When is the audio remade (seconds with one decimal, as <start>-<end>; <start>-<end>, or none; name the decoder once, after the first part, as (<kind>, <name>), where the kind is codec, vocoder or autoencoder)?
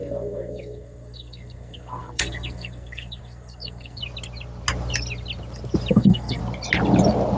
0.0-4.0 (codec, SNAC); 5.9-6.4